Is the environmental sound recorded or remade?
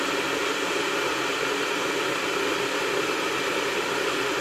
recorded